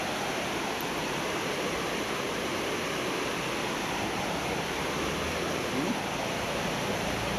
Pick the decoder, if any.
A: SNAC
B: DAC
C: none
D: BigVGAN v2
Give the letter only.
C